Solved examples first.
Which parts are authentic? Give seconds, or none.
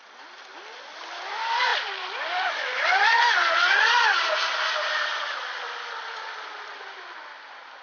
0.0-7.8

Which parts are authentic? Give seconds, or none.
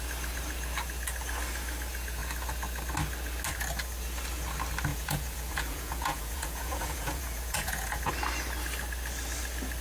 0.0-4.9; 8.1-9.8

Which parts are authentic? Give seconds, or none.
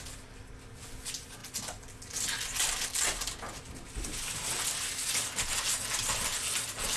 0.0-7.0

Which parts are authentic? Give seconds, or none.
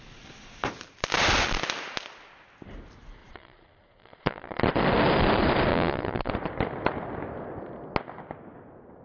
0.0-3.2; 4.6-5.7; 6.3-9.0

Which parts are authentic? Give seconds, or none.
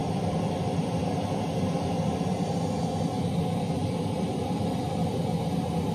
1.0-3.8; 5.2-5.9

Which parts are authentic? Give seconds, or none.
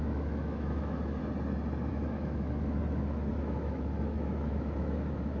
1.2-1.9; 2.8-3.3